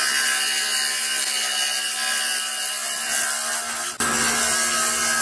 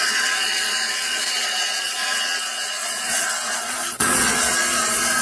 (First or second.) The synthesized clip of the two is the second